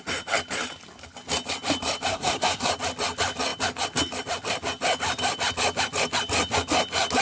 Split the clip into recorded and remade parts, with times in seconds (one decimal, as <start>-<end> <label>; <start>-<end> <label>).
0.0-2.1 recorded; 2.1-2.7 remade; 2.7-7.2 recorded